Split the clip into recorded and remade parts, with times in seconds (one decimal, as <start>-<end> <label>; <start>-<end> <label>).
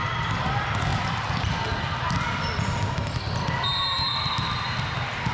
0.0-5.3 recorded